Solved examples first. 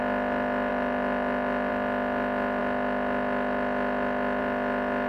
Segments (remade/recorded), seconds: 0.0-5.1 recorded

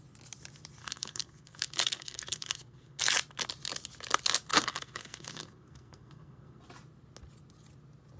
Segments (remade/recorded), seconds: 0.0-0.8 recorded; 0.8-3.0 remade; 3.0-4.5 recorded; 4.5-6.6 remade; 6.6-8.2 recorded

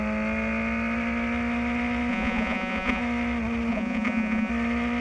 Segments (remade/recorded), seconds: 0.0-2.1 recorded; 2.1-3.0 remade; 3.0-3.7 recorded; 3.7-4.5 remade; 4.5-5.0 recorded

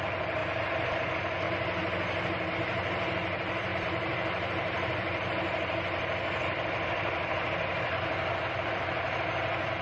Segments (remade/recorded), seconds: 0.0-0.4 remade; 0.4-2.5 recorded; 2.5-9.8 remade

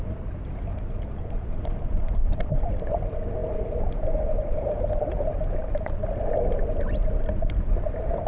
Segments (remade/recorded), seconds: 0.0-0.7 recorded; 0.7-2.7 remade; 2.7-3.4 recorded; 3.4-4.9 remade; 4.9-8.3 recorded

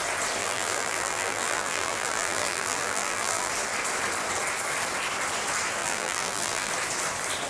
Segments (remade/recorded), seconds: 0.0-0.4 recorded; 0.4-3.5 remade; 3.5-5.8 recorded; 5.8-6.7 remade; 6.7-7.5 recorded